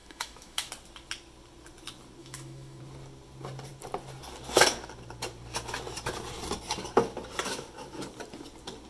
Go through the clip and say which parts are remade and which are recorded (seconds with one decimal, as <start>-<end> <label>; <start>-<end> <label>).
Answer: 0.0-0.7 remade; 0.7-2.2 recorded; 2.2-2.8 remade; 2.8-8.9 recorded

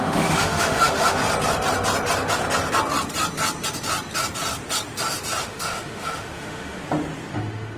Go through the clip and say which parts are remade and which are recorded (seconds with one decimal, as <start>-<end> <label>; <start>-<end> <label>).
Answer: 0.0-1.2 remade; 1.2-5.4 recorded; 5.4-6.8 remade; 6.8-7.3 recorded; 7.3-7.8 remade

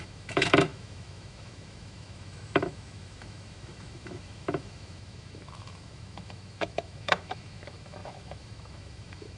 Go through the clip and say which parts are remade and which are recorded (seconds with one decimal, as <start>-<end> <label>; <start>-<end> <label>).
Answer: 0.0-9.4 remade

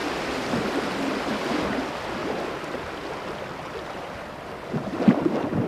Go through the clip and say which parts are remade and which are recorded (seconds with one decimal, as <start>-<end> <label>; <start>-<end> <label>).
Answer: 0.0-5.7 recorded

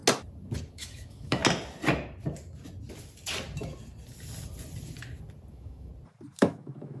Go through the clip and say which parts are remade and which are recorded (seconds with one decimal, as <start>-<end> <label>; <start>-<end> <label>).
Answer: 0.0-0.7 recorded; 0.7-1.4 remade; 1.4-5.5 recorded; 5.5-5.9 remade; 5.9-6.4 recorded; 6.4-7.0 remade